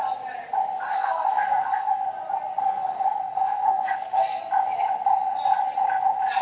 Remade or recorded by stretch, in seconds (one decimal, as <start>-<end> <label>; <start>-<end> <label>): 0.0-0.9 recorded; 0.9-2.0 remade; 2.0-2.6 recorded; 2.6-4.4 remade; 4.4-6.4 recorded